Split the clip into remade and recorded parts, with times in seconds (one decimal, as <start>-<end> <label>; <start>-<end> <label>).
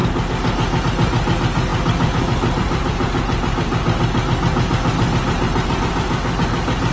0.0-6.9 recorded